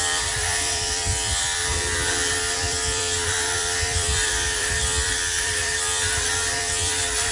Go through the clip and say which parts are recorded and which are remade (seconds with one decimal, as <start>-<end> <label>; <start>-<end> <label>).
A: 0.0-1.8 remade; 1.8-2.3 recorded; 2.3-7.3 remade